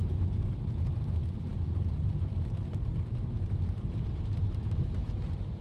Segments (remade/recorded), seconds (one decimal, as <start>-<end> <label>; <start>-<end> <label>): 0.0-5.6 remade